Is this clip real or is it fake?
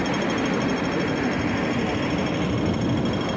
real